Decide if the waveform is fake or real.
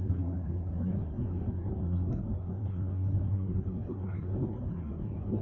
fake